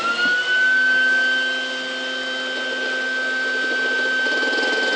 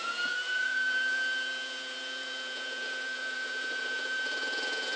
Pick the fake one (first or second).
second